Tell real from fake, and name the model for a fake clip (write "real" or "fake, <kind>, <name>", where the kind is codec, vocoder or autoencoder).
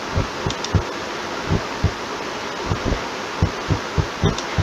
real